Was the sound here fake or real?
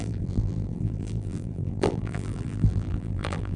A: fake